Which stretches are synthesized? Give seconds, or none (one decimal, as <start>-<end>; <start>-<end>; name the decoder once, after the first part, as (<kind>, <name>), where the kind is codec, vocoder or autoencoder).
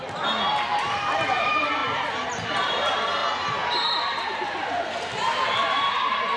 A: 0.5-3.2 (vocoder, BigVGAN v2); 4.0-6.4